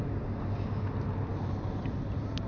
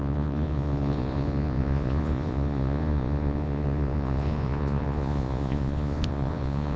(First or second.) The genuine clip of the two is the first